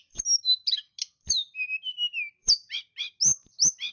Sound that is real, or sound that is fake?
real